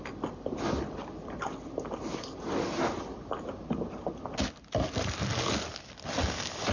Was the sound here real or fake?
real